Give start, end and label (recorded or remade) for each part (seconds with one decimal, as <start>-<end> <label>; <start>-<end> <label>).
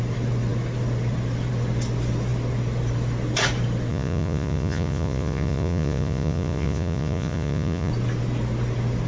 0.0-3.9 recorded; 3.9-7.9 remade; 7.9-9.1 recorded